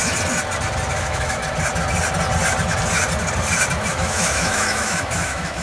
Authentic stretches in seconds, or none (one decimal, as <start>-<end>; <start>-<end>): 0.0-0.9; 1.4-3.9